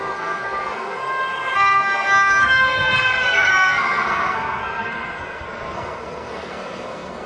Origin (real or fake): fake